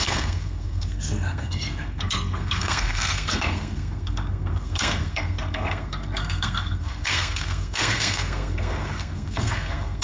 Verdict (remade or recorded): remade